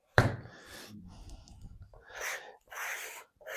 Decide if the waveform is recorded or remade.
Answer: remade